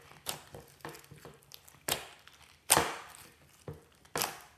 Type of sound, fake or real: real